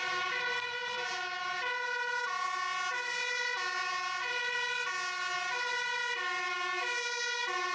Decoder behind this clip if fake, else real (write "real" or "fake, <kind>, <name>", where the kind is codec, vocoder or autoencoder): real